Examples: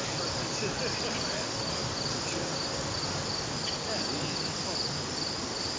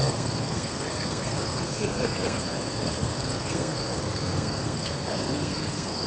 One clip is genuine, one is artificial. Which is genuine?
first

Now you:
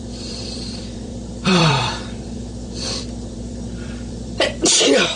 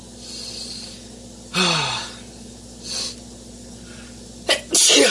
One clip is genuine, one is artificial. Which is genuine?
second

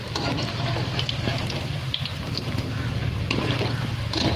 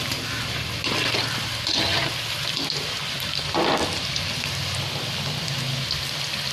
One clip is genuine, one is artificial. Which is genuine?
second